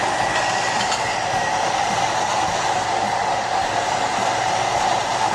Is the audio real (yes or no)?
no